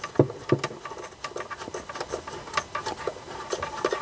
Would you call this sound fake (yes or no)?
no